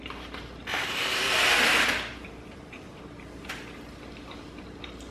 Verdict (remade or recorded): remade